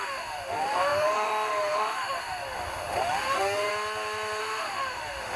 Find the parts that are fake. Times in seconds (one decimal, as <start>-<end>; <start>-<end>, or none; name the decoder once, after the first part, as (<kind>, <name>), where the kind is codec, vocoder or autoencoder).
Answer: 0.0-3.7 (autoencoder, DAC-VAE); 4.4-5.4